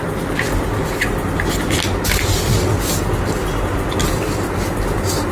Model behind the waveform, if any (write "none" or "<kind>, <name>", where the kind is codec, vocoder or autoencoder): none